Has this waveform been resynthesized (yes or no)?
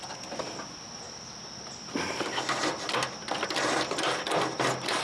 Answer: no